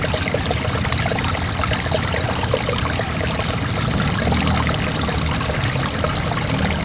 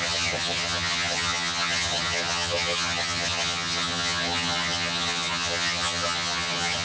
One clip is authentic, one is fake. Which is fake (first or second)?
second